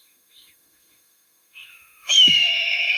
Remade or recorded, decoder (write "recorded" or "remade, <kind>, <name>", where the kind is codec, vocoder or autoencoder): remade, autoencoder, DAC-VAE